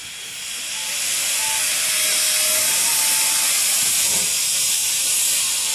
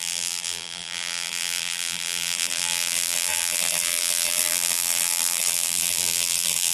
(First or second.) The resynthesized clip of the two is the second